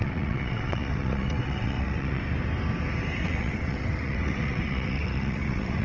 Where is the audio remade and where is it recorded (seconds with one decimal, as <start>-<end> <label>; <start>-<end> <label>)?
0.0-2.2 remade; 2.2-3.2 recorded; 3.2-5.8 remade